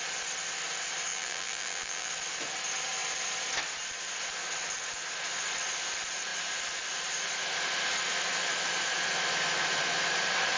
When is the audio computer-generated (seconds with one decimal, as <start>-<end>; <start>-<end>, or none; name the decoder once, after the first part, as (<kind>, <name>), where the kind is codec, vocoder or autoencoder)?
1.1-2.1 (vocoder, BigVGAN v2)